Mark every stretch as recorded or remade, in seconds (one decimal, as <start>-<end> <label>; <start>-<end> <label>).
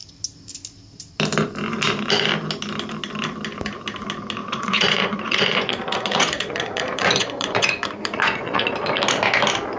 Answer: 0.0-4.4 recorded; 4.4-8.7 remade; 8.7-9.8 recorded